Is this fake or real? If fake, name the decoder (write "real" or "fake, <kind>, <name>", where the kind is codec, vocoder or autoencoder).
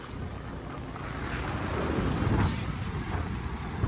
real